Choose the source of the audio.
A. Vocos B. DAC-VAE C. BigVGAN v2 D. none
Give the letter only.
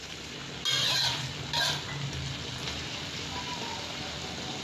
D